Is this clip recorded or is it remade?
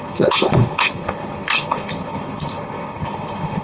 remade